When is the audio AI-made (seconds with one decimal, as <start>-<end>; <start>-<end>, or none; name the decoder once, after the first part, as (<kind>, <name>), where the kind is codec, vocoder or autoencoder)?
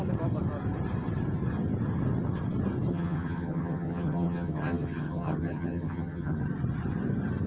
2.9-6.4 (vocoder, HiFi-GAN)